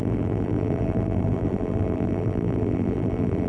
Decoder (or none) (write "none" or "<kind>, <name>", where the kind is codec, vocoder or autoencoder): vocoder, BigVGAN v2